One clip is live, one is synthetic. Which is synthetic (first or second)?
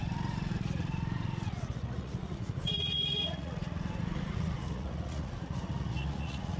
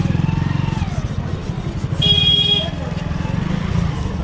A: first